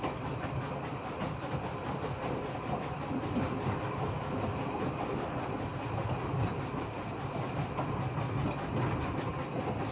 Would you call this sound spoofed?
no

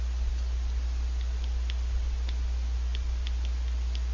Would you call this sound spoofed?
no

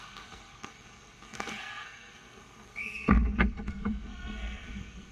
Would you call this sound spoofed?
yes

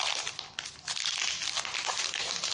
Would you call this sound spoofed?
no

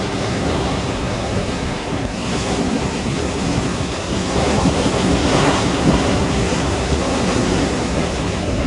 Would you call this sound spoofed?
yes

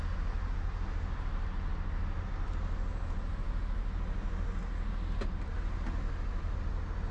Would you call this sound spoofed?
no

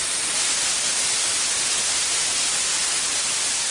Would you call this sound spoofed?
no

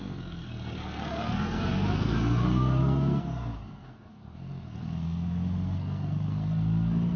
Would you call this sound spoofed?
yes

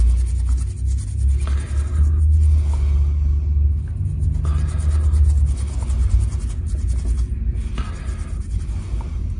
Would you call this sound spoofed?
no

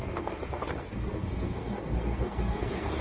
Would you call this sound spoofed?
yes